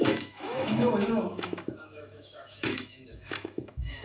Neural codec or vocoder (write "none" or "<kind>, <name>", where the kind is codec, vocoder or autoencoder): autoencoder, DAC-VAE